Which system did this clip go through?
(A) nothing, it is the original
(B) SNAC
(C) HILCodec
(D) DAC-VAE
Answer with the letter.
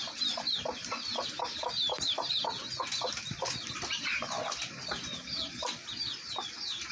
A